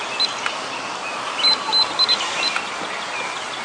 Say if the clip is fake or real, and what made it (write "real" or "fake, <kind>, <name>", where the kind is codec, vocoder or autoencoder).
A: real